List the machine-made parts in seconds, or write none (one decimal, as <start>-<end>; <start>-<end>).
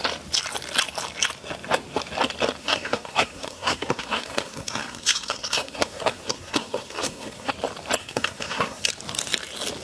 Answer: 2.6-7.5; 8.0-8.9